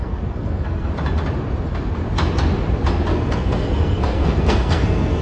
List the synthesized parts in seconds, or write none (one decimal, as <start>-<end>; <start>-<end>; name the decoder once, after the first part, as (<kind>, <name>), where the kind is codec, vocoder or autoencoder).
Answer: 0.0-0.9 (codec, SNAC); 3.1-5.2